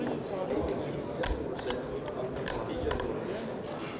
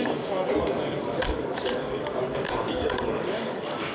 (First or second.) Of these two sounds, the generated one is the second